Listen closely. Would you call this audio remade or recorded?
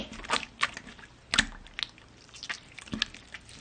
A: recorded